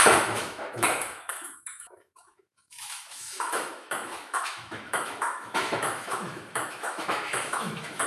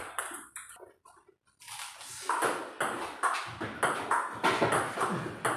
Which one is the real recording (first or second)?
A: second